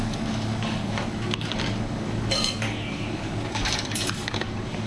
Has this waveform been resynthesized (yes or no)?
yes